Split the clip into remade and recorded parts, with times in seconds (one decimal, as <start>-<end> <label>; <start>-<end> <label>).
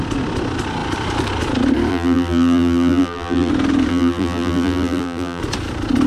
0.0-1.9 recorded; 1.9-3.5 remade; 3.5-3.9 recorded; 3.9-5.4 remade; 5.4-6.1 recorded